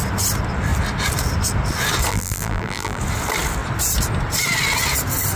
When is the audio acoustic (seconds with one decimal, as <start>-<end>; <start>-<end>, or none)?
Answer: 0.0-2.1; 3.0-5.4